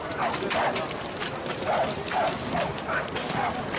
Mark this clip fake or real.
fake